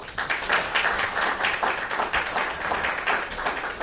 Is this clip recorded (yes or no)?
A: yes